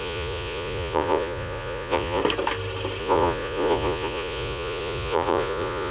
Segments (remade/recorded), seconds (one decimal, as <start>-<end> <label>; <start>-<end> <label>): 0.0-2.2 remade; 2.2-3.0 recorded; 3.0-5.9 remade